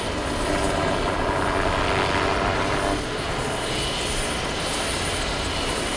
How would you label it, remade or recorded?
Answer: recorded